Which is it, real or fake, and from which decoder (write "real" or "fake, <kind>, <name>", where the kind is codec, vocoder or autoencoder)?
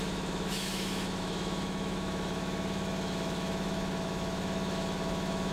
fake, autoencoder, DAC-VAE